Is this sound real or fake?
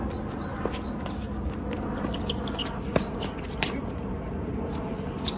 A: real